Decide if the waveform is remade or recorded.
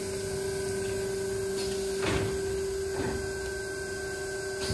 recorded